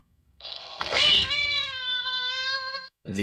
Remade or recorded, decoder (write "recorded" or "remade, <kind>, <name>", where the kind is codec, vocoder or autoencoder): remade, codec, SNAC